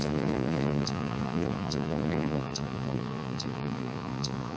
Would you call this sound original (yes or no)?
no